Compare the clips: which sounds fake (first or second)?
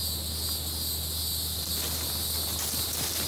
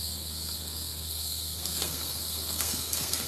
second